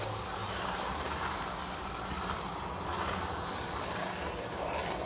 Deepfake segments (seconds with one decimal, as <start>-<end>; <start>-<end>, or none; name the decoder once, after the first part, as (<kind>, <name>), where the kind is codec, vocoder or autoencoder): none

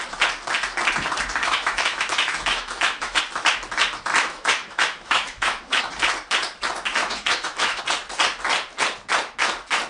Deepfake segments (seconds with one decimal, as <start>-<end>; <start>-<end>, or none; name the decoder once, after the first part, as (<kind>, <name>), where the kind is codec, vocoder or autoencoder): 1.4-3.2 (autoencoder, DAC-VAE); 4.1-5.8; 7.0-7.8

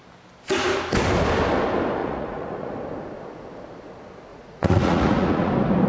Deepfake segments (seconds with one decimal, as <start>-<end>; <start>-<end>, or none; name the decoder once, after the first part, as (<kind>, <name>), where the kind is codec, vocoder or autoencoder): 2.0-2.7 (vocoder, Vocos); 4.3-5.5

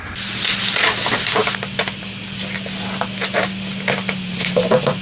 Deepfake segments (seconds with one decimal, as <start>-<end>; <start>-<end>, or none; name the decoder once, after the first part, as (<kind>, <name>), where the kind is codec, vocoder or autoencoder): none

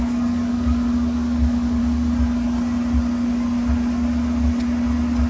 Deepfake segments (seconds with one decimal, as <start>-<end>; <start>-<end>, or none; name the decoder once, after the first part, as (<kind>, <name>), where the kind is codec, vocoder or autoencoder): 0.0-1.8 (codec, DAC)

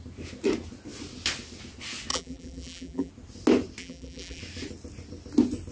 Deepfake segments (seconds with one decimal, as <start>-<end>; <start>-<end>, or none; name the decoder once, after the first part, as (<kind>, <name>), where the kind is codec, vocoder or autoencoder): 2.1-3.1 (vocoder, BigVGAN v2); 3.8-4.4

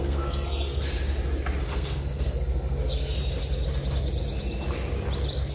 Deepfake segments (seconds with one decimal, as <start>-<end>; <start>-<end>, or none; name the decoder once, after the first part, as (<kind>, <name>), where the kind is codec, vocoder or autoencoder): 0.0-0.9 (codec, SNAC); 1.6-3.2